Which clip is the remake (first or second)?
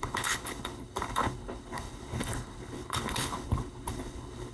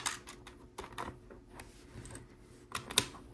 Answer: first